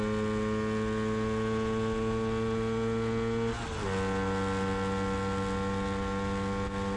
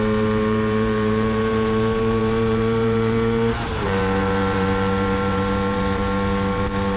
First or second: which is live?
first